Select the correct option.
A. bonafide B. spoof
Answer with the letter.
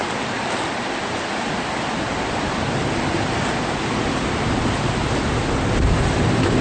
A